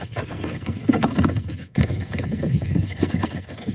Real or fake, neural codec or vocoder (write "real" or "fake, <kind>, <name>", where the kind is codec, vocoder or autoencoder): fake, codec, SNAC